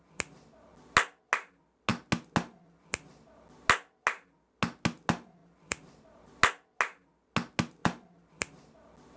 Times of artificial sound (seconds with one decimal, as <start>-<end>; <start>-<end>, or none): 5.4-6.3; 7.8-8.3